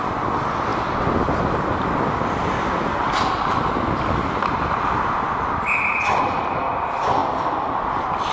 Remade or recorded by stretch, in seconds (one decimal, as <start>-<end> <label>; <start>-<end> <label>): 0.0-8.3 recorded